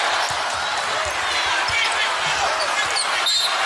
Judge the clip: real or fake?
real